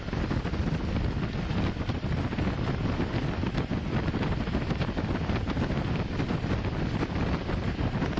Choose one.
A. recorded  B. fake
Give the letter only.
A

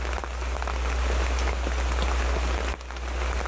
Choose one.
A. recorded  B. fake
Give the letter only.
A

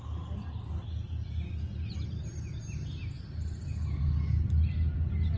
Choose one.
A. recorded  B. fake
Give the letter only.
A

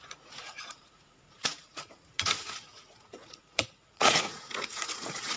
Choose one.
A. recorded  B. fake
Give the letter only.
B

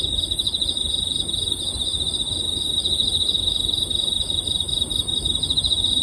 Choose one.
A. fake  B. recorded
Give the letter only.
B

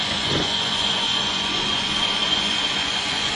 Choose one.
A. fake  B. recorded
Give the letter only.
A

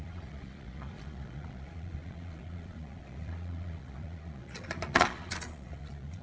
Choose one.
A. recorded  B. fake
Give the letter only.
B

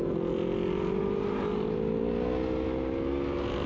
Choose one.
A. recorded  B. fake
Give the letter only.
A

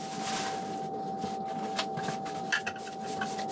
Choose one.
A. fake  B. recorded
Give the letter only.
B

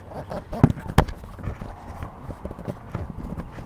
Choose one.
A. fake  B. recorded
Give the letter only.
B